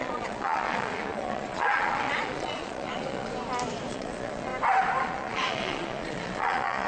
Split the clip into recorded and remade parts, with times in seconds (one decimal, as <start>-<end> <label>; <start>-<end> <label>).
0.0-3.3 remade; 3.3-3.9 recorded; 3.9-4.5 remade; 4.5-5.0 recorded; 5.0-6.9 remade